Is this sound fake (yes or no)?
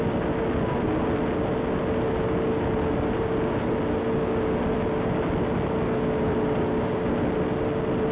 no